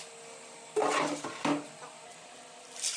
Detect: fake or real real